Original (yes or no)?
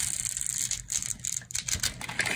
yes